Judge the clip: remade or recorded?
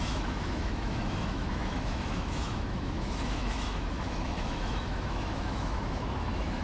remade